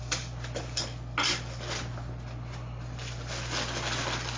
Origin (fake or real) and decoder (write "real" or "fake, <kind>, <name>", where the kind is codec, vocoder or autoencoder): real